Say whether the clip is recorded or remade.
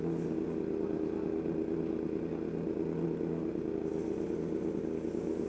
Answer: recorded